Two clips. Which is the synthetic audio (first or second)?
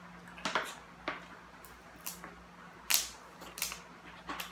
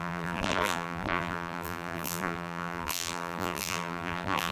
second